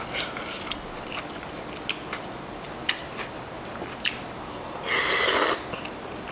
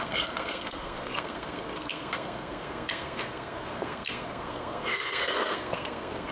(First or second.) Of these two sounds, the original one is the first